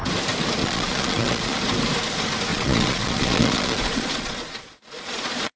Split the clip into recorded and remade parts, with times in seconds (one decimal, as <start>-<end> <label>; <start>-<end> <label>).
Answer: 0.0-0.6 recorded; 0.6-1.6 remade; 1.6-2.5 recorded; 2.5-5.6 remade

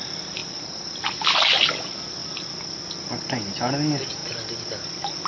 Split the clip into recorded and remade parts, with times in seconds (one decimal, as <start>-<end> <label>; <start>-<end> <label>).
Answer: 0.0-2.2 recorded; 2.2-3.0 remade; 3.0-5.3 recorded

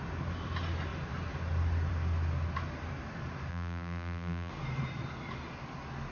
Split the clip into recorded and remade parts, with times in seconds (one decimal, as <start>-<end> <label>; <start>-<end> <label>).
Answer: 0.0-3.5 recorded; 3.5-4.5 remade; 4.5-6.1 recorded

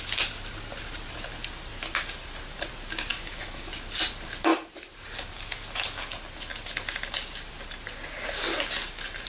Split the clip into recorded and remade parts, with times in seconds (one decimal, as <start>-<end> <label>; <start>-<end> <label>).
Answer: 0.0-3.1 recorded; 3.1-3.7 remade; 3.7-9.3 recorded

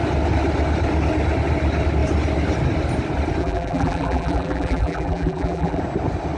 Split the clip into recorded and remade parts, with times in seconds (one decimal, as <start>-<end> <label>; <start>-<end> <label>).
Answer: 0.0-3.4 recorded; 3.4-5.8 remade; 5.8-6.4 recorded

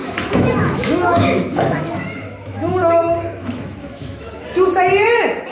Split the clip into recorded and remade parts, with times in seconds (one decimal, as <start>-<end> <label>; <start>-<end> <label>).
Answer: 0.0-3.0 remade; 3.0-3.4 recorded; 3.4-4.4 remade; 4.4-5.5 recorded

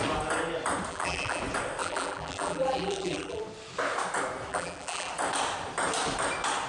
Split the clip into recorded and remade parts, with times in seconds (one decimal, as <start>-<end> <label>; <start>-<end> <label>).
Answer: 0.0-0.9 recorded; 0.9-1.4 remade; 1.4-1.8 recorded; 1.8-3.4 remade; 3.4-4.5 recorded; 4.5-5.1 remade; 5.1-6.7 recorded